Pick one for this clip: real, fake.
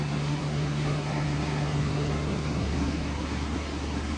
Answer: fake